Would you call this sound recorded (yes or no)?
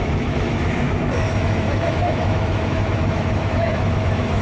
no